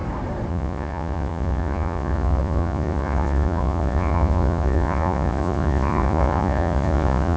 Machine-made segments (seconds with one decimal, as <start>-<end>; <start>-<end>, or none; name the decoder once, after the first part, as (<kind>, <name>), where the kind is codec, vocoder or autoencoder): 0.5-7.4 (vocoder, Vocos)